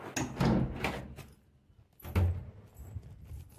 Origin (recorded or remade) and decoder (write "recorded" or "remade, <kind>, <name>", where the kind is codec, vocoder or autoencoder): recorded